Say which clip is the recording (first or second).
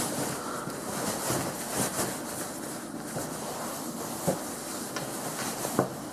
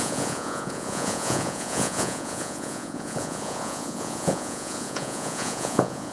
first